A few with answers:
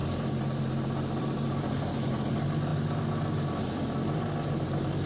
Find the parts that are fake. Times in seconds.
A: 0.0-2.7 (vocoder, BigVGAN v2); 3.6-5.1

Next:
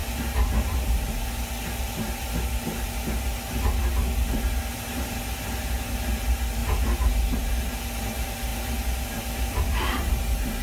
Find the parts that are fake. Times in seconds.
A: 0.0-1.1 (vocoder, BigVGAN v2); 8.5-10.1

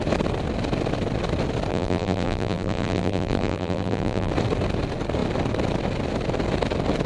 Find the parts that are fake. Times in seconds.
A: 1.7-4.3 (vocoder, BigVGAN v2)

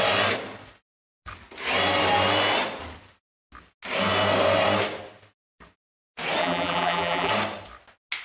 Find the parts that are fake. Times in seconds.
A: 6.4-7.3 (vocoder, BigVGAN v2)

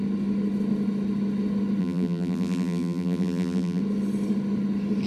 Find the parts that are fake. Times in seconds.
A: 1.8-3.8 (vocoder, BigVGAN v2)

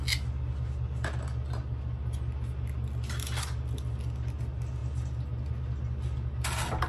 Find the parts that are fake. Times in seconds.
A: none